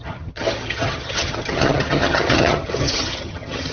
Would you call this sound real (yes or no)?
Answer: no